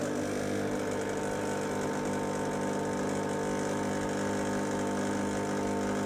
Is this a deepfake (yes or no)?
no